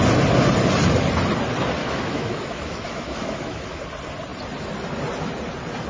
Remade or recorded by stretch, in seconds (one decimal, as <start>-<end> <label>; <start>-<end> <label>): 0.0-1.8 recorded; 1.8-3.8 remade; 3.8-5.9 recorded